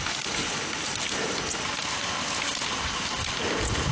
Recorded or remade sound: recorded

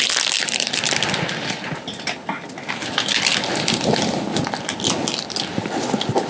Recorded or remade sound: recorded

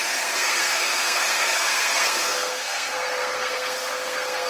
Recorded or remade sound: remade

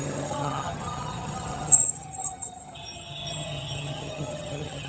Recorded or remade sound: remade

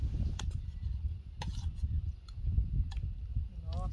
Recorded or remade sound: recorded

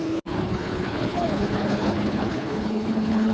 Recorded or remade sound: remade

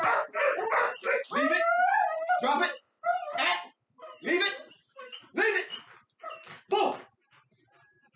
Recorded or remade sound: recorded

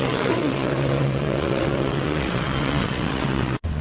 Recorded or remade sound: remade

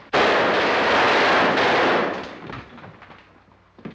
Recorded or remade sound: recorded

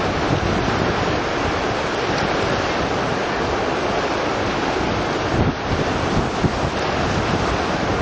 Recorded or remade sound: recorded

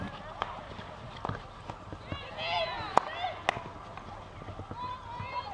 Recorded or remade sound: recorded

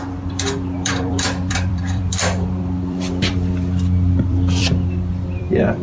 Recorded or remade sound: remade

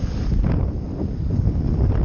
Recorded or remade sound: recorded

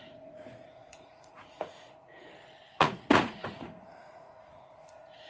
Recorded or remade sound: remade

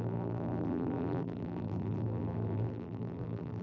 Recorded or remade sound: remade